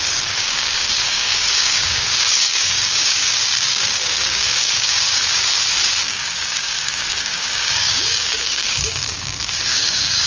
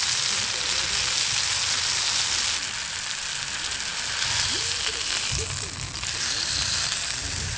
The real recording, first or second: second